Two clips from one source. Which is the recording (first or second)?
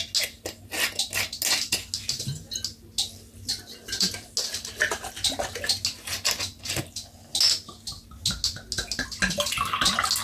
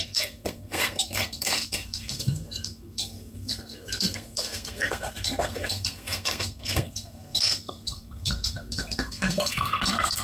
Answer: first